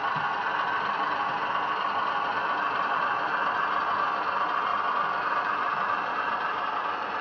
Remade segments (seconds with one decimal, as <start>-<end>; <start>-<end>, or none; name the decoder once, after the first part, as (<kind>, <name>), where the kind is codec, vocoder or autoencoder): 2.3-3.3 (vocoder, BigVGAN v2); 4.2-4.7; 5.3-7.2